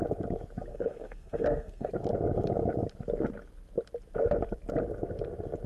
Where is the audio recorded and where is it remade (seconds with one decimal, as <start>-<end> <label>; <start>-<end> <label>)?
0.0-0.7 recorded; 0.7-1.9 remade; 1.9-5.7 recorded